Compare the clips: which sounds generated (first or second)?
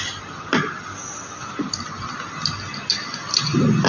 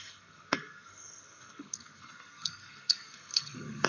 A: second